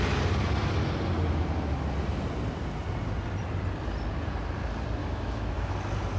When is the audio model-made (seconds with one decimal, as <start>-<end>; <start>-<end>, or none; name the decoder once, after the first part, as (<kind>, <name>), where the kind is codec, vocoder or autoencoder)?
5.0-5.7 (autoencoder, DAC-VAE)